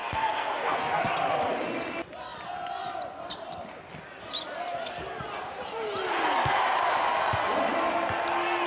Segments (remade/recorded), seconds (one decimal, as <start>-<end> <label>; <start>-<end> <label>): 0.0-0.8 remade; 0.8-8.7 recorded